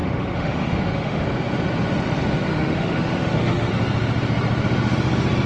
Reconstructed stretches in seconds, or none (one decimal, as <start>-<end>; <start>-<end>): 0.0-1.2; 2.5-3.7